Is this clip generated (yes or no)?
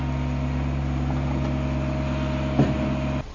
no